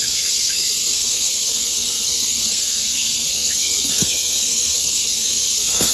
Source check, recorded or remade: remade